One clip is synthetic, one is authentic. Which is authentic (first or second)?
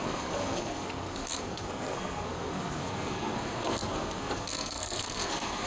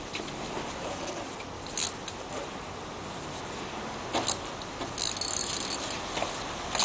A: second